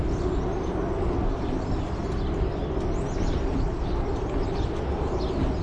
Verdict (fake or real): real